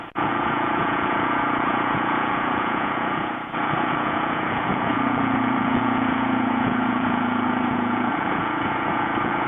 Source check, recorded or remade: remade